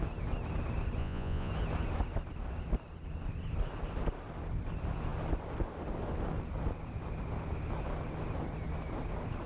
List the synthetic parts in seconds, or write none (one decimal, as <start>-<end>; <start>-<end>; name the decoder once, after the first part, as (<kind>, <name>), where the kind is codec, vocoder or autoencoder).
1.0-1.5 (vocoder, Vocos)